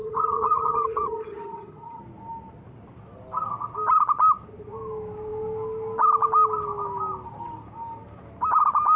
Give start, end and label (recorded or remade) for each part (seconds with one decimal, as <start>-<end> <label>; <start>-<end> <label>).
0.0-2.0 remade; 2.0-9.0 recorded

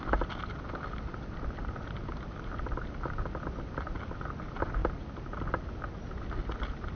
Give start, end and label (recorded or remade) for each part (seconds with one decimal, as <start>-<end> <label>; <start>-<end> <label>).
0.0-7.0 recorded

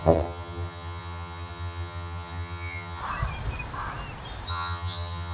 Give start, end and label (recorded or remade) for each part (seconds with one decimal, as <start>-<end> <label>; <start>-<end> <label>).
0.0-3.0 remade; 3.0-4.5 recorded; 4.5-5.3 remade